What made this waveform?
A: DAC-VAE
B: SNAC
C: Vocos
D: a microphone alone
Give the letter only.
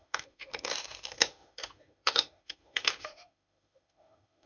A